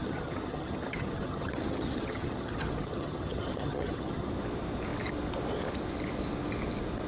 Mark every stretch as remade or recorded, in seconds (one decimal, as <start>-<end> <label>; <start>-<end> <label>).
0.0-4.3 remade; 4.3-7.1 recorded

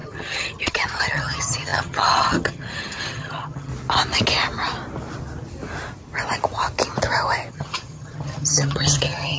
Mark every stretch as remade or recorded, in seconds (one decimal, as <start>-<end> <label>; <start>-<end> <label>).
0.0-3.7 remade; 3.7-7.5 recorded; 7.5-9.4 remade

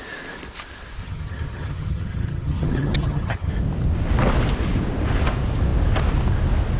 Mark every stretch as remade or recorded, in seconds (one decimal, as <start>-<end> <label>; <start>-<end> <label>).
0.0-1.0 recorded; 1.0-3.5 remade; 3.5-6.8 recorded

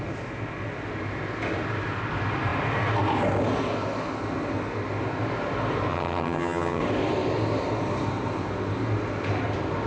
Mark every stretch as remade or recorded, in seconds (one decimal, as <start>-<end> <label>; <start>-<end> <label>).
0.0-5.9 recorded; 5.9-6.8 remade; 6.8-9.9 recorded

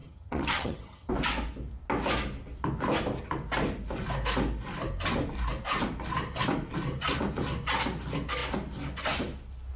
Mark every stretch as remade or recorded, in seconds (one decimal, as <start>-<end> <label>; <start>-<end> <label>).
0.0-1.1 remade; 1.1-9.8 recorded

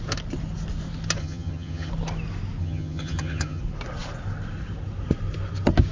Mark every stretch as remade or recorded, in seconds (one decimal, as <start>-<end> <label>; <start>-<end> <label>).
0.0-1.2 recorded; 1.2-1.9 remade; 1.9-2.6 recorded; 2.6-3.6 remade; 3.6-5.9 recorded

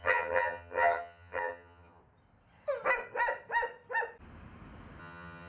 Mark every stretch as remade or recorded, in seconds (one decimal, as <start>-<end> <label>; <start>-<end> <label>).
0.0-2.0 remade; 2.0-5.0 recorded; 5.0-5.5 remade

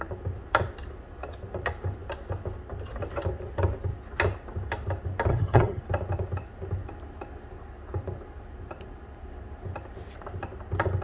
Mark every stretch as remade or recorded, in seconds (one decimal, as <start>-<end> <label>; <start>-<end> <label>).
0.0-5.3 recorded; 5.3-5.8 remade; 5.8-11.0 recorded